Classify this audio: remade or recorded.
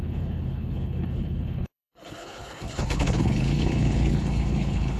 remade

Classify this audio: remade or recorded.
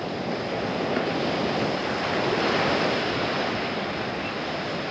recorded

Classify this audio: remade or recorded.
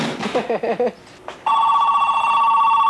recorded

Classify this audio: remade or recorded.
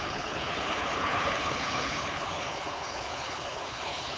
remade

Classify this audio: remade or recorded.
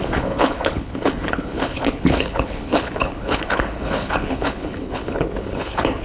remade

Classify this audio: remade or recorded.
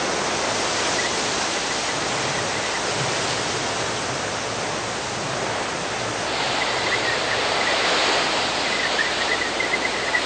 recorded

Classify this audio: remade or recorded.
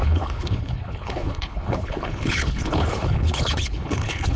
remade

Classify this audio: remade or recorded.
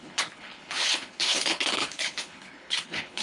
remade